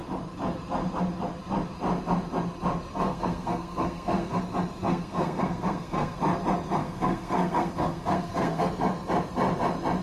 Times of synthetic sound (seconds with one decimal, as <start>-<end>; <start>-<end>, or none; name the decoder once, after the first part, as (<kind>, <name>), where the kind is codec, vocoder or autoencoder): 2.9-4.4 (codec, SNAC); 4.9-6.2; 6.8-8.7